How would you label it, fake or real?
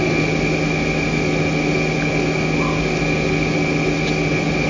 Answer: real